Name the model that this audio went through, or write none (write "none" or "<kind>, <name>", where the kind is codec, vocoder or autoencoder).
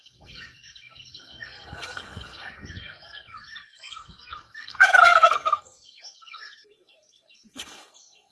codec, SNAC